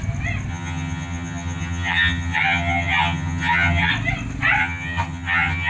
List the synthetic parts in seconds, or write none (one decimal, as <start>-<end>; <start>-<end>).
0.5-3.9; 4.6-5.7